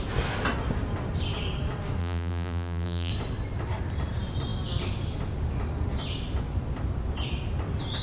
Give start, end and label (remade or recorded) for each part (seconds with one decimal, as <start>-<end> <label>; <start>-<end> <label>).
0.0-2.0 recorded; 2.0-3.1 remade; 3.1-8.0 recorded